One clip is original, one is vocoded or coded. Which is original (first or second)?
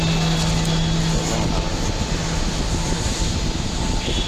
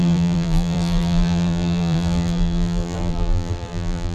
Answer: first